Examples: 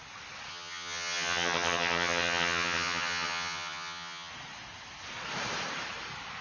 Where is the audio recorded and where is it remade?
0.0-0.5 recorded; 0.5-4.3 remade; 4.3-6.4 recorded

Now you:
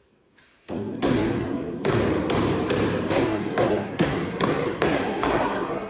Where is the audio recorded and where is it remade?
0.0-2.0 remade; 2.0-3.1 recorded; 3.1-5.9 remade

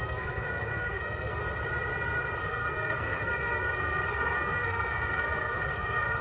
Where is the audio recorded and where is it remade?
0.0-1.4 remade; 1.4-2.4 recorded; 2.4-6.2 remade

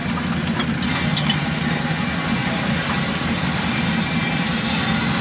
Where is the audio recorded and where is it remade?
0.0-1.1 recorded; 1.1-1.9 remade; 1.9-2.4 recorded; 2.4-4.6 remade; 4.6-5.2 recorded

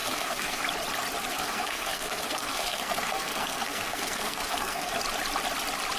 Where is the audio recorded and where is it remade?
0.0-0.6 remade; 0.6-1.3 recorded; 1.3-4.9 remade; 4.9-6.0 recorded

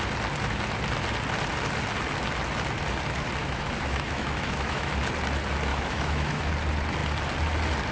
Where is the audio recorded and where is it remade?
0.0-3.4 recorded; 3.4-4.9 remade; 4.9-5.7 recorded; 5.7-6.5 remade; 6.5-7.9 recorded